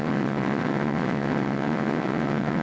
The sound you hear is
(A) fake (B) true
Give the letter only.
A